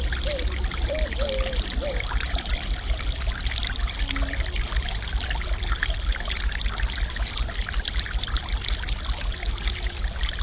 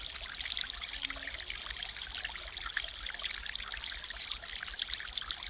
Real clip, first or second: first